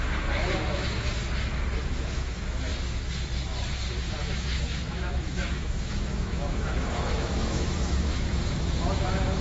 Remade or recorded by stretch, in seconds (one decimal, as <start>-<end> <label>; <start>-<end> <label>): 0.0-1.2 remade; 1.2-1.8 recorded; 1.8-2.7 remade; 2.7-4.2 recorded; 4.2-9.4 remade